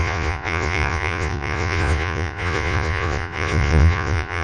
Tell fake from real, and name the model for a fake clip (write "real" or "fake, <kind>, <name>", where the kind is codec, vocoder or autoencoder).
fake, vocoder, Vocos